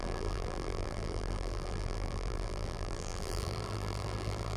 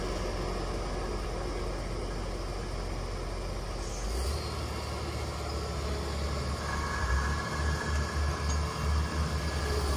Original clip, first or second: second